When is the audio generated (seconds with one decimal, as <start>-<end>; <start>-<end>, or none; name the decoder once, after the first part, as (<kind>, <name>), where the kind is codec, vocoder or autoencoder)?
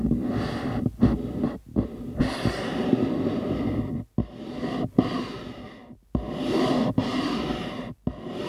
none